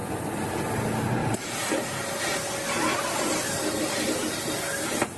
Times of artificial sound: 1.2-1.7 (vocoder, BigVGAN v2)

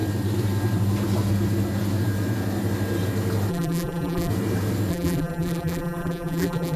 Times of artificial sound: 3.5-4.3 (vocoder, BigVGAN v2); 4.9-6.8

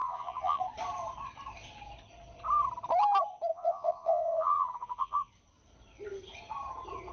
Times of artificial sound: 0.0-0.6 (vocoder, Vocos); 3.5-5.3

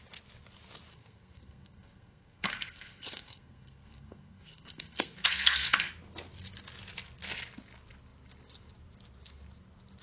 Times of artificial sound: 0.9-5.9 (codec, SNAC)

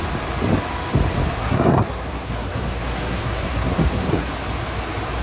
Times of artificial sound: 1.4-4.3 (codec, SNAC)

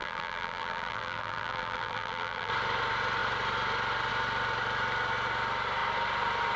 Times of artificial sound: 0.0-2.5 (vocoder, BigVGAN v2)

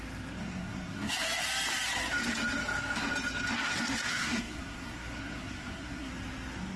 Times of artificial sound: 0.4-1.1 (codec, SNAC); 4.1-6.1